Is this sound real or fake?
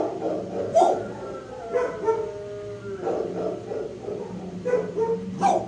real